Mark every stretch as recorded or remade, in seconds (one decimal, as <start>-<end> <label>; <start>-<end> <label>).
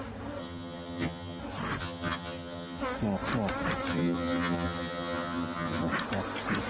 0.0-0.4 recorded; 0.4-1.4 remade; 1.4-1.8 recorded; 1.8-2.8 remade; 2.8-3.9 recorded; 3.9-5.9 remade; 5.9-6.7 recorded